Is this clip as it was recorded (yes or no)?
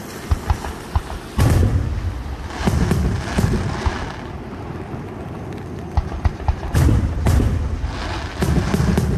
yes